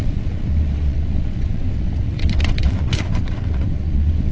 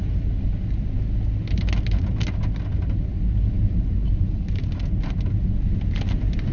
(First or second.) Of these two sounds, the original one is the second